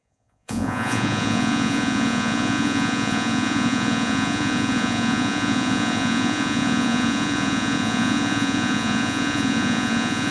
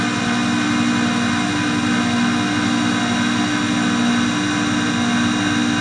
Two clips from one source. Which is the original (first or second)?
second